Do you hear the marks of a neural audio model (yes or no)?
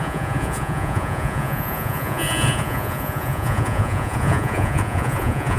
yes